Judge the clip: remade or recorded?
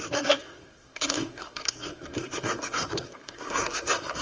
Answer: remade